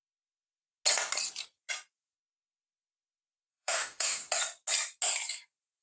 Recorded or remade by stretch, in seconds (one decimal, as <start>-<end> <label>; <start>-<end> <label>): 0.0-3.5 recorded; 3.5-4.2 remade; 4.2-5.8 recorded